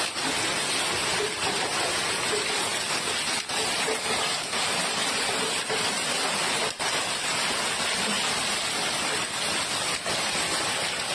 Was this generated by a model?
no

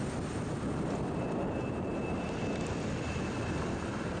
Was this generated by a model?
no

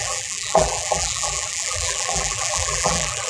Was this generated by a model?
yes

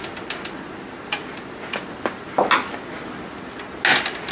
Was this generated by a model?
no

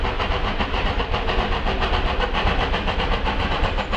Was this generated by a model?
no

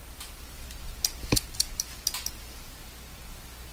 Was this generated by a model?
no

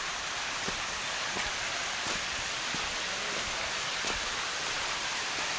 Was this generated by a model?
yes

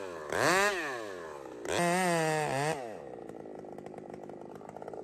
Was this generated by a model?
no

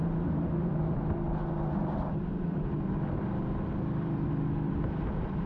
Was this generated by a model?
yes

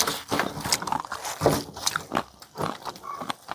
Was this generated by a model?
no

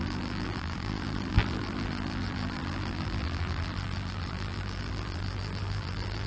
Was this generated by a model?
yes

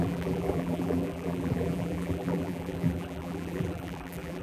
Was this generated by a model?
yes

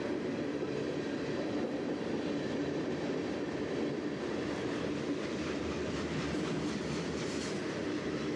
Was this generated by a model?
yes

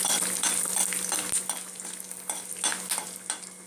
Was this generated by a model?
no